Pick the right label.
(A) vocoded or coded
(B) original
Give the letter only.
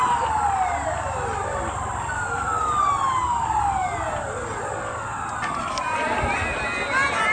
B